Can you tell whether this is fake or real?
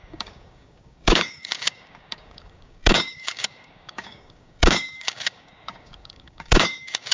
fake